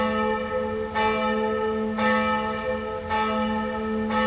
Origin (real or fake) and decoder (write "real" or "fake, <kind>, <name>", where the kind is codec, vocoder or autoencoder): real